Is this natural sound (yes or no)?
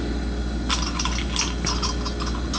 yes